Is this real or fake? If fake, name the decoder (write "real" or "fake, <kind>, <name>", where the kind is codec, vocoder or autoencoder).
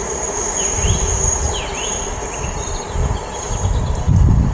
fake, vocoder, BigVGAN v2